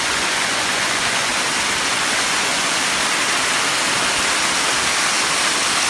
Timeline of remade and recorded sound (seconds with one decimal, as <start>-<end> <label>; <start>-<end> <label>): 0.0-1.3 remade; 1.3-1.9 recorded; 1.9-2.8 remade; 2.8-5.9 recorded